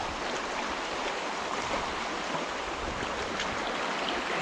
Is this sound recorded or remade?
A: recorded